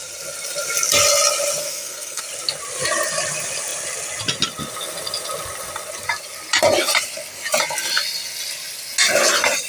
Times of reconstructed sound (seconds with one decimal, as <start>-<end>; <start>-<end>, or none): 1.6-2.2